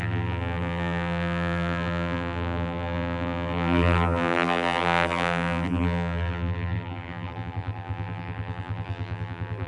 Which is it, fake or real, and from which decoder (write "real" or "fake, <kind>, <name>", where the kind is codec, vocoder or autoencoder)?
fake, vocoder, BigVGAN v2